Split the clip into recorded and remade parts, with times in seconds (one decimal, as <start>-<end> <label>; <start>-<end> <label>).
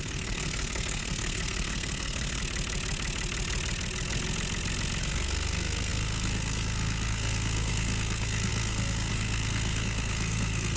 0.0-2.4 remade; 2.4-5.0 recorded; 5.0-10.8 remade